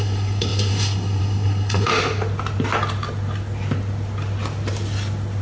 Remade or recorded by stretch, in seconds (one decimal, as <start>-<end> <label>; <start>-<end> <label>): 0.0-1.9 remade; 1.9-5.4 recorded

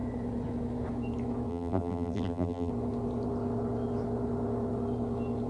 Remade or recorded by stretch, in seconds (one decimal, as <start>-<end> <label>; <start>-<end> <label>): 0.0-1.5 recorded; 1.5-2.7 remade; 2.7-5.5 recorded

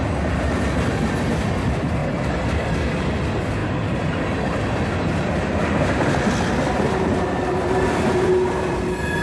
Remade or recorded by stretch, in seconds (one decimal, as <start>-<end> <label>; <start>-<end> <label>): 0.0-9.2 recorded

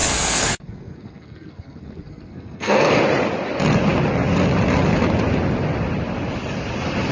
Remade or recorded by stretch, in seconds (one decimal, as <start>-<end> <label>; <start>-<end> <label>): 0.0-3.0 remade; 3.0-7.1 recorded